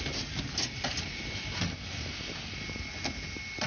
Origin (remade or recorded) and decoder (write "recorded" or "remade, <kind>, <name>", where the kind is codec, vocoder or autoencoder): recorded